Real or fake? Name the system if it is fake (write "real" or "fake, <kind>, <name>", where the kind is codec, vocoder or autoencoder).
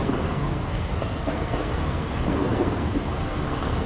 fake, codec, SNAC